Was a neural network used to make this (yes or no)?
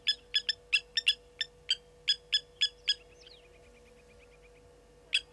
no